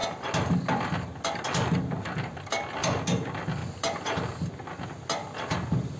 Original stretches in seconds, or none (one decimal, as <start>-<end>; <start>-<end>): 0.0-6.0